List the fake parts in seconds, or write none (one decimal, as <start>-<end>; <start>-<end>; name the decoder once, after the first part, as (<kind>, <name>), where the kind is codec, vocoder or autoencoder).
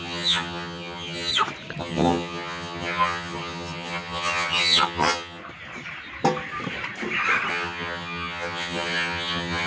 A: 0.0-1.3 (vocoder, HiFi-GAN); 1.8-5.4; 7.5-9.7